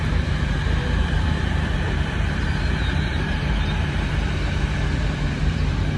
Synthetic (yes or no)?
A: yes